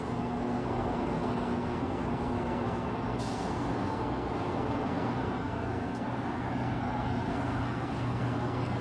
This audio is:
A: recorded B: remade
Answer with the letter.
B